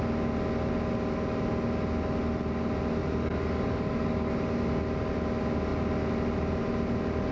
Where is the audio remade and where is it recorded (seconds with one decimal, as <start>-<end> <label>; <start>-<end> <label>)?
0.0-3.0 recorded; 3.0-4.3 remade; 4.3-7.3 recorded